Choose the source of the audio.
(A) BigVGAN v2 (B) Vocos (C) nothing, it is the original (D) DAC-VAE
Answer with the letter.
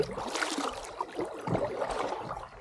C